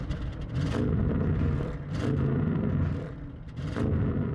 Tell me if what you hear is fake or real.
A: real